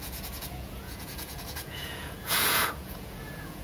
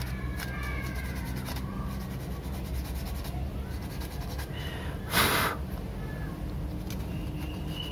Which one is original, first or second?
second